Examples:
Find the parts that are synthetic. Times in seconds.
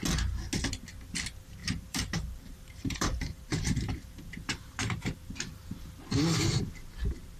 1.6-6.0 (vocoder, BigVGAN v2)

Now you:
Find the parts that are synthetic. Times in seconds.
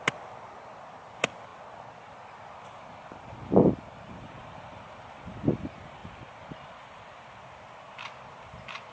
none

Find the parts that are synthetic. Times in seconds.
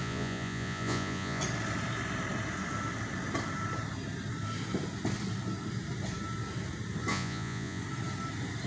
0.0-1.4 (vocoder, Vocos); 7.1-7.8